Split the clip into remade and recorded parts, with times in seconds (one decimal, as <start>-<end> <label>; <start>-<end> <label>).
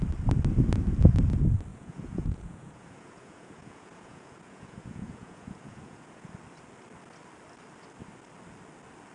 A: 0.0-1.7 recorded; 1.7-6.3 remade; 6.3-9.1 recorded